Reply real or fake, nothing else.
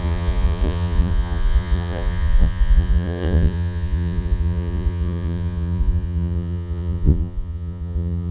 fake